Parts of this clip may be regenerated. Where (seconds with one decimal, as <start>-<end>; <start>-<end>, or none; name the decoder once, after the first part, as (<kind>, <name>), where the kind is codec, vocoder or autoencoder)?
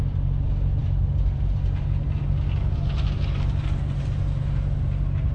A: none